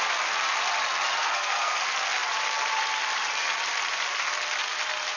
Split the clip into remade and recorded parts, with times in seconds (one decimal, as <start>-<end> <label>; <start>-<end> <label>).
0.0-1.2 recorded; 1.2-1.8 remade; 1.8-5.2 recorded